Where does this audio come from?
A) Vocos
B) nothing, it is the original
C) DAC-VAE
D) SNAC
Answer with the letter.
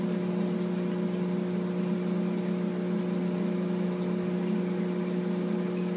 B